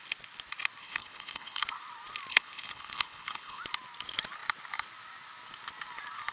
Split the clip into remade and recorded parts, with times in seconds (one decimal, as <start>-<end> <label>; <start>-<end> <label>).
0.0-0.8 recorded; 0.8-1.6 remade; 1.6-2.3 recorded; 2.3-3.6 remade; 3.6-6.3 recorded